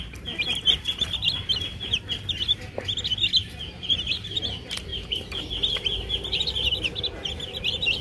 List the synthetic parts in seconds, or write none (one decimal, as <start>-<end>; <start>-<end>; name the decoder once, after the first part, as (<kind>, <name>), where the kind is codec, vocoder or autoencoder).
3.4-4.4 (vocoder, BigVGAN v2); 4.9-5.5